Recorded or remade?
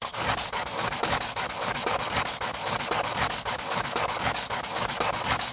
remade